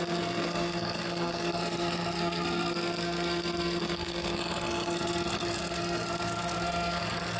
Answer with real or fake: fake